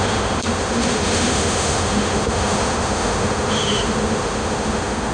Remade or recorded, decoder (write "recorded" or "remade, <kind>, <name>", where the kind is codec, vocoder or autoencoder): remade, autoencoder, DAC-VAE